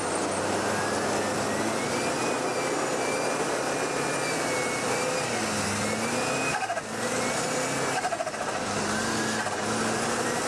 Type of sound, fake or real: real